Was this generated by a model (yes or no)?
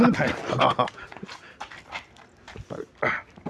no